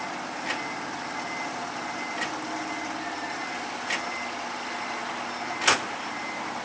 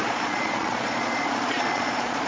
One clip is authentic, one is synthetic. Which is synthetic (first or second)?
second